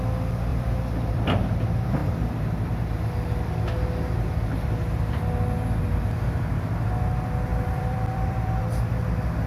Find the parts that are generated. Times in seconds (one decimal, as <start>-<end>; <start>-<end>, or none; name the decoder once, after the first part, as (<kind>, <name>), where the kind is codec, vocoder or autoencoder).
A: 0.5-1.5 (vocoder, BigVGAN v2); 7.5-8.6